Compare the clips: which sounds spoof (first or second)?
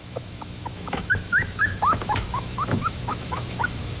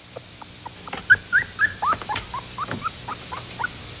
first